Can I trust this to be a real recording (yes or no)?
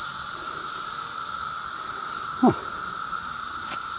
yes